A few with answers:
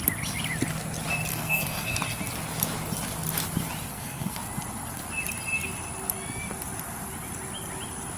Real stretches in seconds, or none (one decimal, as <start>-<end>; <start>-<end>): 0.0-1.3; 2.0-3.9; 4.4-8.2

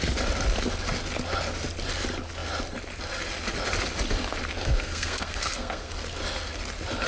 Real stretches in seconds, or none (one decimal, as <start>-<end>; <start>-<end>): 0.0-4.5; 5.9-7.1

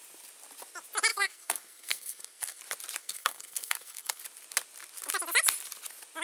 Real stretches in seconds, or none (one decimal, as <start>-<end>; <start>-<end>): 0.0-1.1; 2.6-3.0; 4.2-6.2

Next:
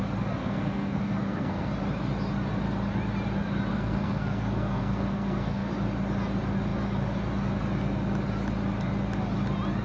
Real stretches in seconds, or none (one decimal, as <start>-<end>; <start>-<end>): 0.0-0.4; 1.7-3.7; 5.7-9.8

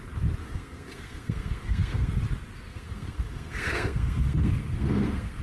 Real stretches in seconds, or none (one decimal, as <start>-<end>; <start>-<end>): 0.0-0.4; 2.2-2.7

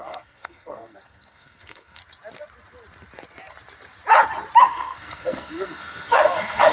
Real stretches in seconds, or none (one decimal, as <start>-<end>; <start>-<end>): 2.0-4.6

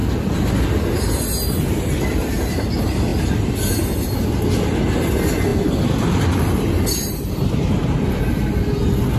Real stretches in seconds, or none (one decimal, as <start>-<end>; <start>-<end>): 0.0-9.2

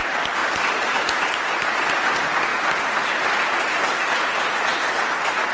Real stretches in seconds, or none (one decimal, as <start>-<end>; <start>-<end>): 0.0-5.5